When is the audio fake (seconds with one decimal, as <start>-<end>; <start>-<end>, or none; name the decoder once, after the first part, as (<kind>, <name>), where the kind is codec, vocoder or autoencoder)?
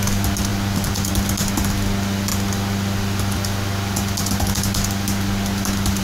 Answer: none